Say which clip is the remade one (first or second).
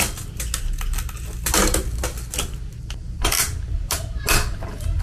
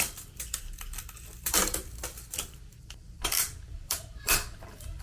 second